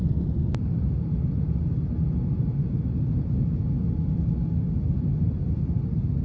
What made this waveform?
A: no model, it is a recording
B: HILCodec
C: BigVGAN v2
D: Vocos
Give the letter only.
A